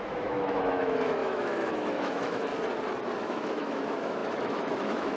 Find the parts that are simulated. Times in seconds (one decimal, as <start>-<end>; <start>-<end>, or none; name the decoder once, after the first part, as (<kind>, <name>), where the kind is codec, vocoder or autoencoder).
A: 0.0-2.5 (autoencoder, DAC-VAE); 3.2-5.2